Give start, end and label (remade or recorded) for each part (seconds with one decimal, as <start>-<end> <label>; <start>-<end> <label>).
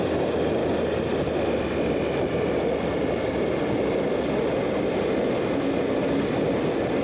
0.0-7.0 recorded